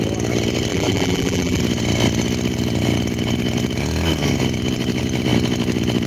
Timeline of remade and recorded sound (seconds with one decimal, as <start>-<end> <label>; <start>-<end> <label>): 0.0-0.7 recorded; 0.7-1.6 remade; 1.6-6.1 recorded